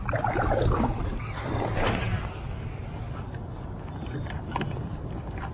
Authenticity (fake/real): real